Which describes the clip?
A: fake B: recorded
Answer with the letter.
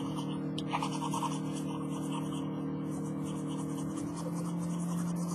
B